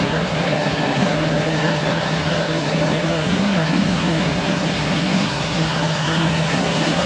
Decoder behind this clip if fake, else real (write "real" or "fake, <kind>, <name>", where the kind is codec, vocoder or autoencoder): fake, codec, SNAC